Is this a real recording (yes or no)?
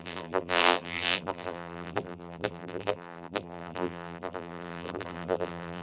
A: no